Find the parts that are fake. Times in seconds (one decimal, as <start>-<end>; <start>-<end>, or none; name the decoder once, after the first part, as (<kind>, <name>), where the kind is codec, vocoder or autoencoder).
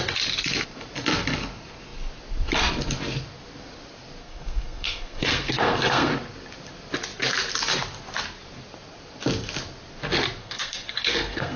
4.2-6.1 (codec, SNAC); 10.4-11.6